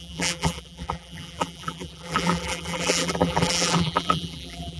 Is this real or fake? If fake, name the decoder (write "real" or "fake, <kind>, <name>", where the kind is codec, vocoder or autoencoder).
fake, vocoder, BigVGAN v2